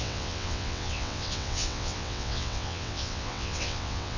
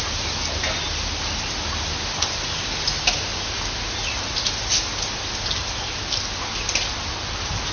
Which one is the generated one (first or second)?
first